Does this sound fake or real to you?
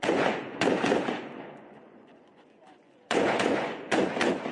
fake